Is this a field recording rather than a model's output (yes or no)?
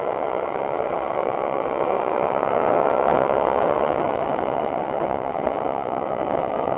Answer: no